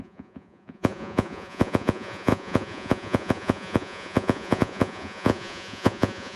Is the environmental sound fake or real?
fake